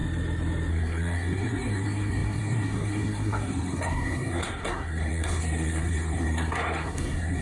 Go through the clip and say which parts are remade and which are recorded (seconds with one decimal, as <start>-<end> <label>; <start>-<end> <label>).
0.0-0.7 recorded; 0.7-7.4 remade